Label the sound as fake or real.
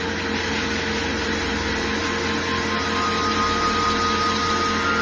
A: real